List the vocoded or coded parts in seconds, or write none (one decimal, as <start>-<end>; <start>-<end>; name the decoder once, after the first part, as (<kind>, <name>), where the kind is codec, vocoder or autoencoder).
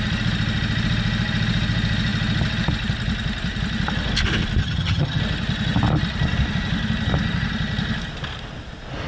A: 4.6-5.2 (vocoder, HiFi-GAN)